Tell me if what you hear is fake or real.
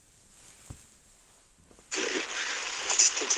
fake